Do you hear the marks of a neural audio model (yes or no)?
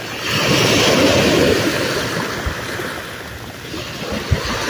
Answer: no